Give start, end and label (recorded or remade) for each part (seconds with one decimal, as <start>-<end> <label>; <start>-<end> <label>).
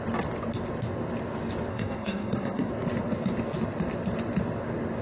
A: 0.0-1.7 recorded; 1.7-2.7 remade; 2.7-5.0 recorded